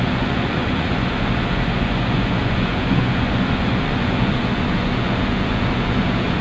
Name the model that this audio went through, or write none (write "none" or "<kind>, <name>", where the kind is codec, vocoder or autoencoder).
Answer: vocoder, Vocos